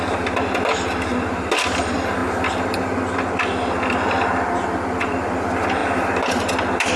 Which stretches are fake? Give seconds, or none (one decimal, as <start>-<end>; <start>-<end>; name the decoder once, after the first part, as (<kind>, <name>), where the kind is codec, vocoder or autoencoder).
none